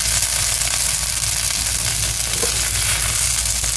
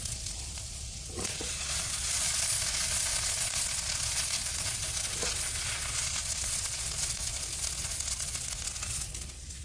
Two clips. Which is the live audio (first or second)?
first